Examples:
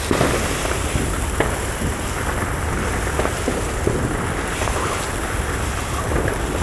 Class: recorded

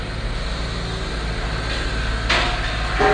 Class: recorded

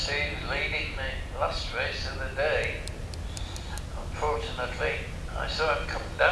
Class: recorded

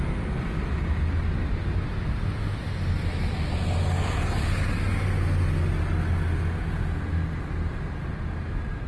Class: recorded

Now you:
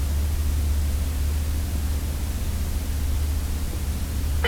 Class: recorded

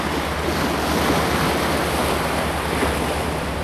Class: recorded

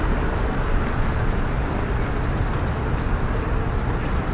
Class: recorded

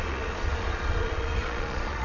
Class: remade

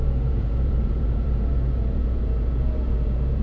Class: remade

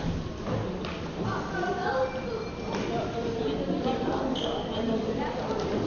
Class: recorded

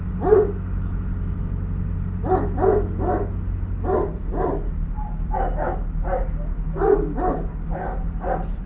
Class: recorded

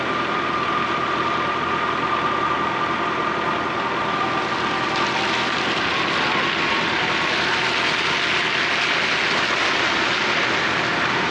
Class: recorded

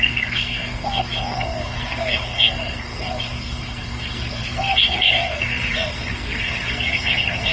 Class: remade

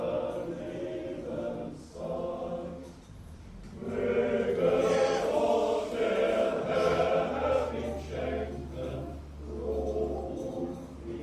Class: recorded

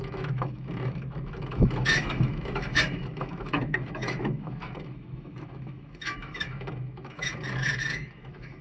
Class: remade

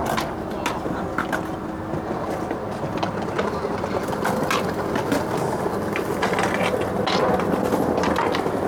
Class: recorded